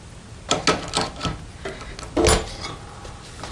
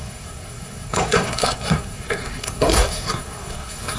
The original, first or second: first